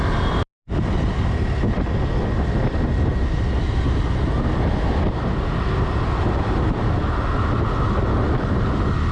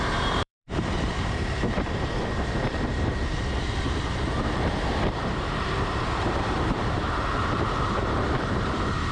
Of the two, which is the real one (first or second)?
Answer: first